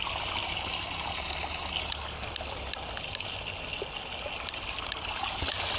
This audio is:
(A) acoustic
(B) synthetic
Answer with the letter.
A